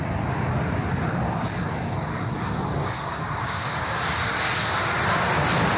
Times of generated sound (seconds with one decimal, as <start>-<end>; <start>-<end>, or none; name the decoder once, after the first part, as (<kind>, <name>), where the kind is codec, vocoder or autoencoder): 2.8-4.5 (codec, DAC)

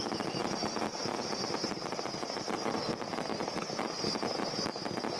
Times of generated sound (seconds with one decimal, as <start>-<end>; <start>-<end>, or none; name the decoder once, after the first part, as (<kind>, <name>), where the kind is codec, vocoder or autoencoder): none

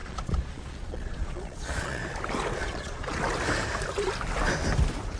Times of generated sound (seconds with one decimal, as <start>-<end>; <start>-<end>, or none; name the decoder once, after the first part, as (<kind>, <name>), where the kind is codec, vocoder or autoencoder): 0.0-2.0 (vocoder, Vocos); 2.6-3.2

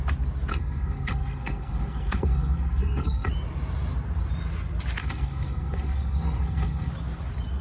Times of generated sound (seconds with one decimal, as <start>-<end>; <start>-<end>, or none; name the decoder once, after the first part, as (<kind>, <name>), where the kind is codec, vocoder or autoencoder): 0.5-3.3 (codec, SNAC); 5.0-6.9

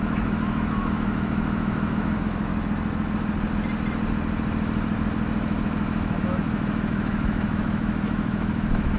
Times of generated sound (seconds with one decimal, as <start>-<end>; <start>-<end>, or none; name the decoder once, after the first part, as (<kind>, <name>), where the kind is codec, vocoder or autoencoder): 0.0-2.5 (autoencoder, DAC-VAE); 6.2-9.0

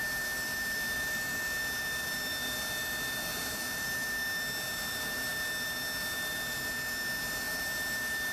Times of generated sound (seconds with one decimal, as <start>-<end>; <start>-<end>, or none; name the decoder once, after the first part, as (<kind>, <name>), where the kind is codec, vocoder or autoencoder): none

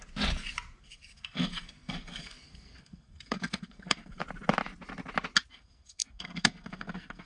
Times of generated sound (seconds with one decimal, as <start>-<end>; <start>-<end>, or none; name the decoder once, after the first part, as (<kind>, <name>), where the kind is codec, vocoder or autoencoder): 0.8-4.2 (codec, SNAC); 5.5-7.3